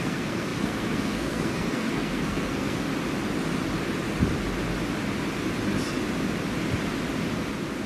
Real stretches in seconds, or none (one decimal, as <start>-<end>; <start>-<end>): 2.9-7.9